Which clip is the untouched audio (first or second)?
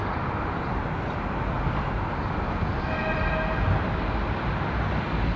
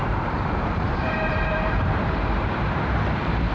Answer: first